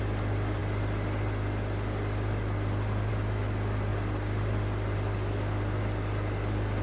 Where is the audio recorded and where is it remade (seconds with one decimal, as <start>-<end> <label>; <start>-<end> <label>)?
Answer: 0.0-6.8 recorded